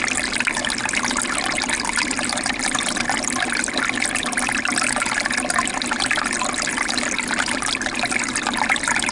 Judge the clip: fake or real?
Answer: real